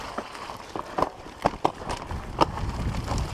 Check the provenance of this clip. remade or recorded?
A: recorded